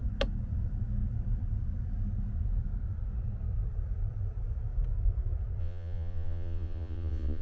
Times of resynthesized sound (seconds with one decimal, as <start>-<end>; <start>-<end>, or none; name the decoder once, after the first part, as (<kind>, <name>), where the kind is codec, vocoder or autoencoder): 5.6-7.4 (vocoder, Vocos)